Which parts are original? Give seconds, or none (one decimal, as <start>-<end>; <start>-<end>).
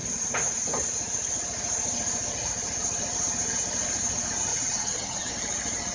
0.0-4.5; 5.3-5.9